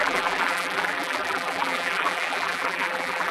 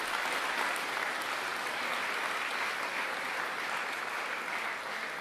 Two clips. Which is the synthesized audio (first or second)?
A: first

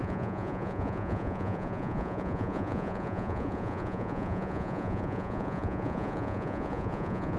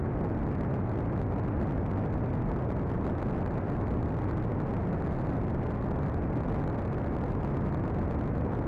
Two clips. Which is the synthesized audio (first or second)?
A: first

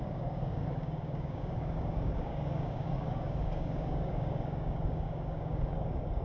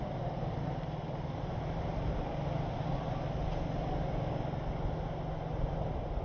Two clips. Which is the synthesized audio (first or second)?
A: first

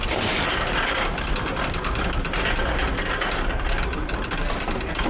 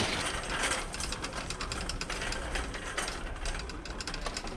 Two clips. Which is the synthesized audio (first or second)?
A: second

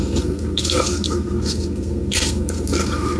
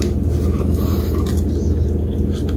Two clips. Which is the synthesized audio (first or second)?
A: first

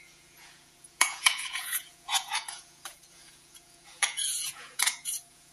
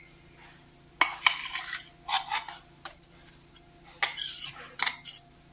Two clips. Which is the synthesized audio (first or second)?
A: first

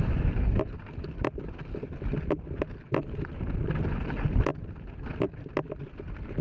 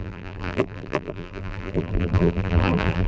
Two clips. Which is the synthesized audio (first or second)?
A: second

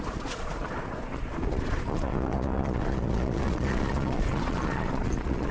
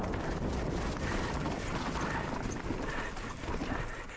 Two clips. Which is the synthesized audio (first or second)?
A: first